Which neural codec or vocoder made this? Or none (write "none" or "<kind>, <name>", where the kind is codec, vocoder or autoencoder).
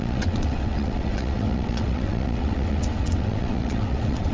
vocoder, WaveNeXt